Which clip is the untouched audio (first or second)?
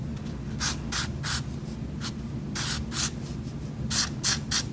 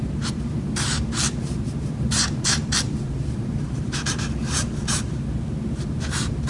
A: first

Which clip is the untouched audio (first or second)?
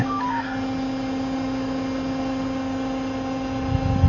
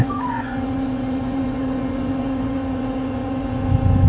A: first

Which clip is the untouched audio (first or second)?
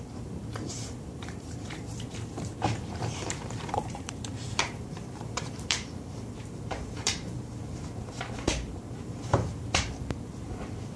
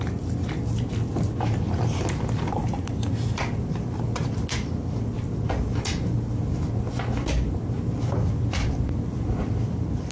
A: second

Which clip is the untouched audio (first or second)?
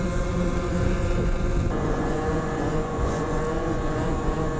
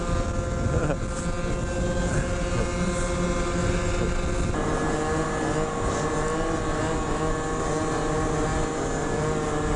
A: second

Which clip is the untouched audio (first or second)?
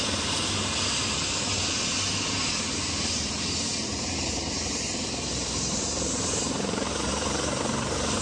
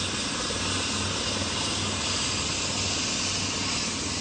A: second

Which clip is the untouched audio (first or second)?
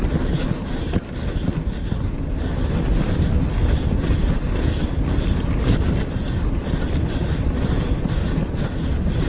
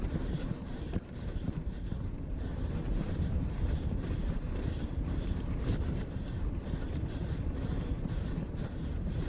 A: first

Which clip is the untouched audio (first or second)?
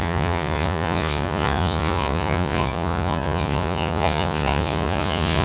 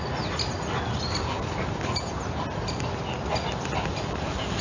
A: second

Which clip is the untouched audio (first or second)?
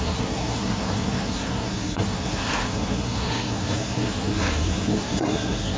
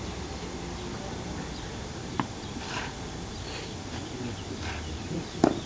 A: second